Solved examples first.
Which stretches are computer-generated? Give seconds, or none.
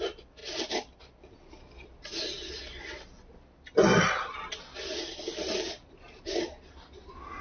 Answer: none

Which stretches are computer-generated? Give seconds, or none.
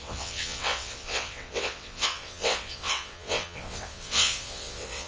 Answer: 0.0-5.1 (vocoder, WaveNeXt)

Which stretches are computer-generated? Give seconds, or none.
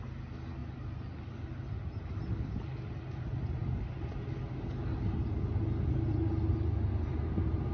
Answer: none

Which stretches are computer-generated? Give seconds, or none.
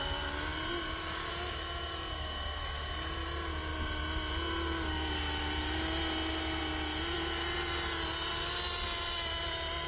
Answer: none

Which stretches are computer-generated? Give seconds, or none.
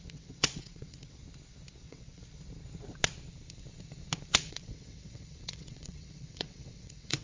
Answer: 0.0-1.2 (vocoder, WaveNeXt); 1.8-2.2; 4.5-7.2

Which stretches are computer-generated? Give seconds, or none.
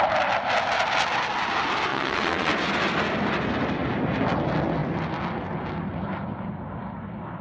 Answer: 1.9-2.5 (vocoder, WaveNeXt)